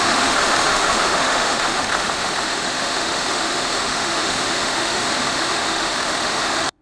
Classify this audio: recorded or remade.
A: remade